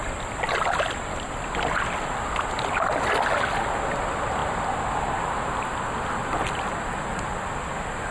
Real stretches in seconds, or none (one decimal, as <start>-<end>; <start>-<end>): 0.0-8.1